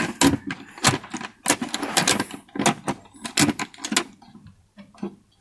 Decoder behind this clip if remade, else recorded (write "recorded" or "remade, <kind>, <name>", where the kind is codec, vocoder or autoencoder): recorded